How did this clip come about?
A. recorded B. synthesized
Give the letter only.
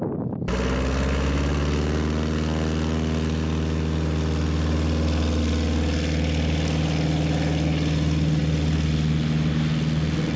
A